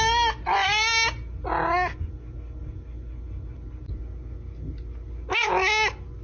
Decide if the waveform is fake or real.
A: real